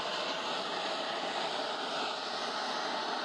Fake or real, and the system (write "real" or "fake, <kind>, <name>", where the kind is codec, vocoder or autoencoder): real